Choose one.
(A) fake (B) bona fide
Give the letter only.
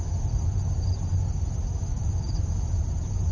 B